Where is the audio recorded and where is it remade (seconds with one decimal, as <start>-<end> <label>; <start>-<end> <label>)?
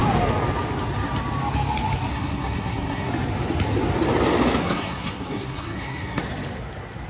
0.0-2.1 recorded; 2.1-3.1 remade; 3.1-4.6 recorded; 4.6-6.2 remade; 6.2-7.1 recorded